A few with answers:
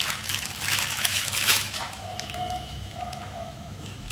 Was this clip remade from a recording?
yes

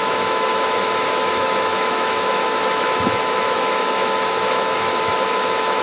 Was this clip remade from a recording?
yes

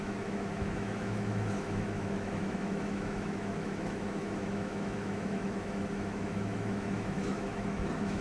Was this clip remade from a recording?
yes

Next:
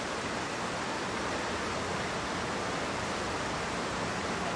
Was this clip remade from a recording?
no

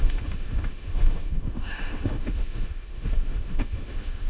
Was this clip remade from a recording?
yes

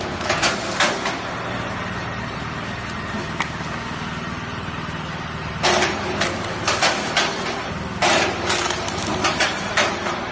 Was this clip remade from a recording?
no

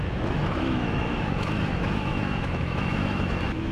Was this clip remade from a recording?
yes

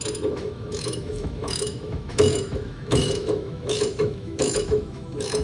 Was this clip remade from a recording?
yes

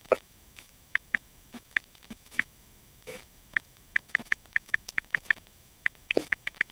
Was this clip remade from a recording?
yes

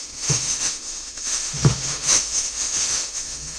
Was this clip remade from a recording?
yes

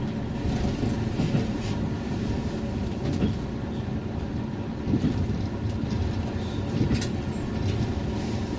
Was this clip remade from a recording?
no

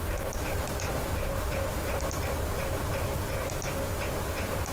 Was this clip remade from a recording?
no